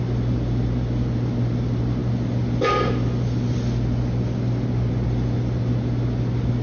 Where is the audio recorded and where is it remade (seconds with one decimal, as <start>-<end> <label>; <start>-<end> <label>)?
0.0-6.6 recorded